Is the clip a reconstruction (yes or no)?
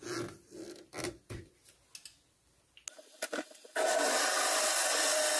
no